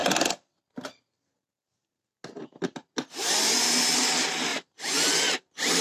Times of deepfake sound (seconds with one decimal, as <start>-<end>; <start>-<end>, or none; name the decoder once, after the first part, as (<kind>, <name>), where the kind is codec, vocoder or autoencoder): none